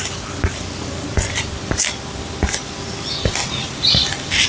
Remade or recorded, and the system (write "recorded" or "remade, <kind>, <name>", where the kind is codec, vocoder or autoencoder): recorded